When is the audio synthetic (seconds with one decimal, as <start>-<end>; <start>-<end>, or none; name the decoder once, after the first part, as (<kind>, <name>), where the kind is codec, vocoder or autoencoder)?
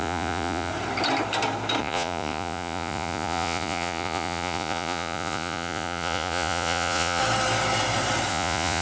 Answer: 0.0-0.7 (vocoder, Vocos); 1.8-7.2; 8.3-8.8